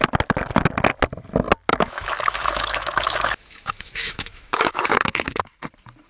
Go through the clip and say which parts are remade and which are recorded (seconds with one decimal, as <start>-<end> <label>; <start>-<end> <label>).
0.0-1.7 recorded; 1.7-5.4 remade; 5.4-6.1 recorded